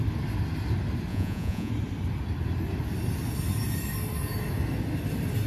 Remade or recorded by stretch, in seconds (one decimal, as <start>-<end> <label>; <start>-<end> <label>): 0.0-1.1 recorded; 1.1-1.7 remade; 1.7-5.5 recorded